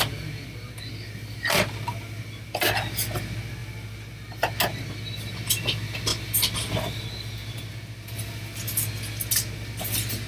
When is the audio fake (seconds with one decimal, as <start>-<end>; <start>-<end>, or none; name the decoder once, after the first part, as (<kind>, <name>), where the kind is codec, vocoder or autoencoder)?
none